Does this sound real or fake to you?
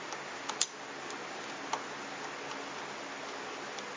real